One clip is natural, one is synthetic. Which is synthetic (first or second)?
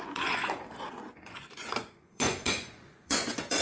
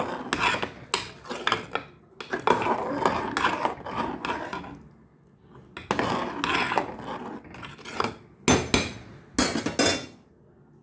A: first